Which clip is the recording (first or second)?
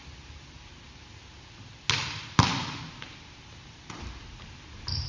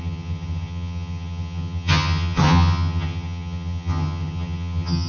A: first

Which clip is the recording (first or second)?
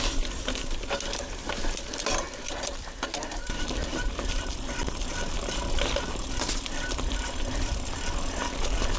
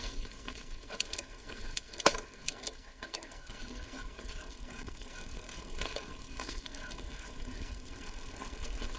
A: first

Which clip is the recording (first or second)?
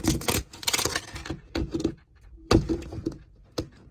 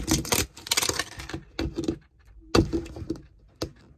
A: second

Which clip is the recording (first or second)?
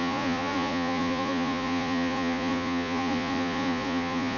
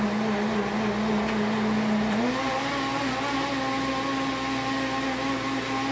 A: second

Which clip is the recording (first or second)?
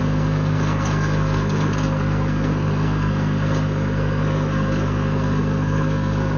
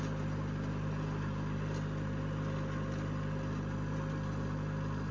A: second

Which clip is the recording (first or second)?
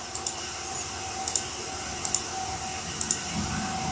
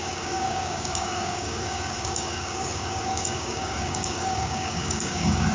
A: first